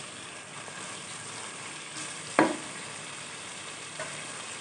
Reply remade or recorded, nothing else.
remade